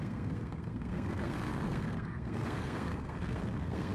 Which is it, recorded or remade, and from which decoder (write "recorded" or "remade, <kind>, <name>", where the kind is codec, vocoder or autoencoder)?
remade, codec, SNAC